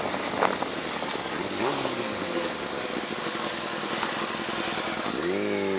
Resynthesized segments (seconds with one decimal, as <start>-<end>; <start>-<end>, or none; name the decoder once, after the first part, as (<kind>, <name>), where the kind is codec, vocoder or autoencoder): 0.8-4.3 (codec, DAC)